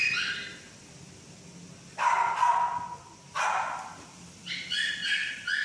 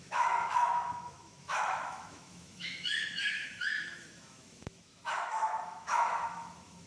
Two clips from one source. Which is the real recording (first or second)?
first